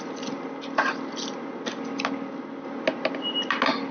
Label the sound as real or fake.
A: real